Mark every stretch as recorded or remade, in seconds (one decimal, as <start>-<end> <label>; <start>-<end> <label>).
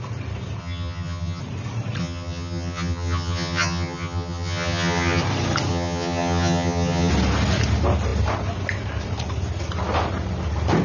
0.0-0.6 recorded; 0.6-1.4 remade; 1.4-2.0 recorded; 2.0-5.2 remade; 5.2-5.7 recorded; 5.7-7.1 remade; 7.1-10.8 recorded